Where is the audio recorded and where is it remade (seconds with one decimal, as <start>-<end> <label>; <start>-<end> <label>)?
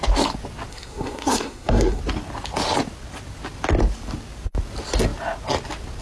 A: 0.0-0.7 recorded; 0.7-2.0 remade; 2.0-6.0 recorded